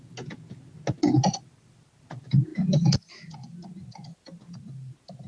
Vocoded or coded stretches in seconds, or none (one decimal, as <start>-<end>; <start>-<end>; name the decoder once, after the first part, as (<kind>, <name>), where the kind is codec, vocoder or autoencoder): none